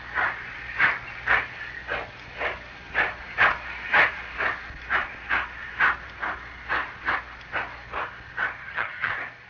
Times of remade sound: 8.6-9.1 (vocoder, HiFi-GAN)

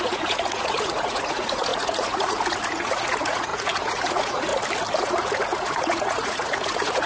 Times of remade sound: 0.0-4.5 (vocoder, Vocos); 5.0-7.1

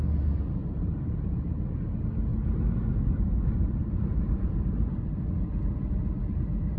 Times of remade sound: 0.6-1.7 (vocoder, BigVGAN v2); 2.3-6.8

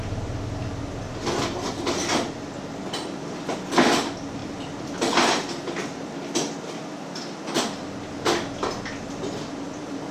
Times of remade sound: none